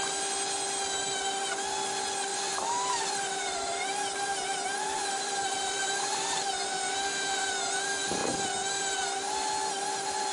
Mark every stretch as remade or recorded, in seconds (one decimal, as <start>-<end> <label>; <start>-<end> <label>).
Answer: 0.0-2.3 recorded; 2.3-7.4 remade; 7.4-10.3 recorded